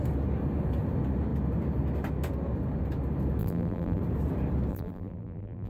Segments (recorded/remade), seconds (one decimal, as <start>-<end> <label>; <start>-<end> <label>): 0.0-3.4 recorded; 3.4-4.0 remade; 4.0-4.7 recorded; 4.7-5.7 remade